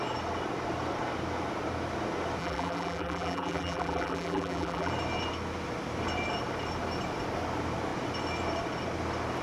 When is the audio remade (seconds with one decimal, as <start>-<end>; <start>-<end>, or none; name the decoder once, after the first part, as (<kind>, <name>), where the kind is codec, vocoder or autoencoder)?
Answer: 2.4-4.9 (vocoder, BigVGAN v2)